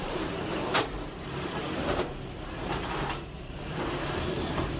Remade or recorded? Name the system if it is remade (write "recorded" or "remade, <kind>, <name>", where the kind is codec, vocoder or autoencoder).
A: remade, vocoder, BigVGAN v2